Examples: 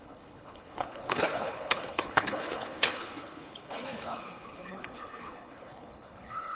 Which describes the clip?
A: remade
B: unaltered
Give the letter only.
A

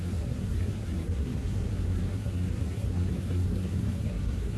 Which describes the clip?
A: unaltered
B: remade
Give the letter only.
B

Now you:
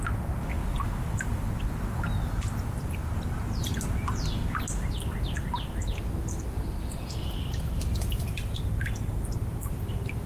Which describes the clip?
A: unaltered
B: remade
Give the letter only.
A